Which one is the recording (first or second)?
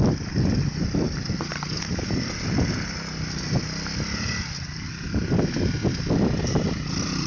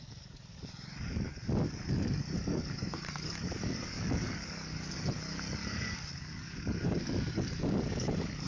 first